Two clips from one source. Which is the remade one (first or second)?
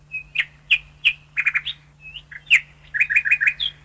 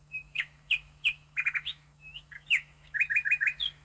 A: second